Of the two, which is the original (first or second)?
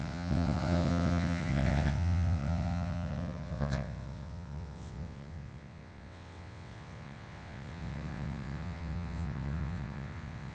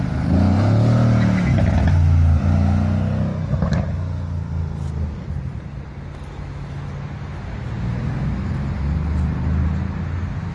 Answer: second